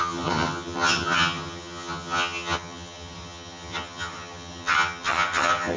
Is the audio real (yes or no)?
no